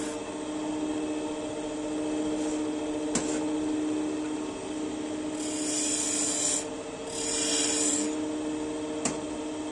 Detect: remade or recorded recorded